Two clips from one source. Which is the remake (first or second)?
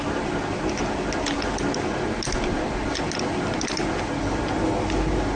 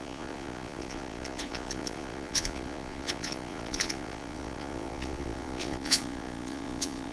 second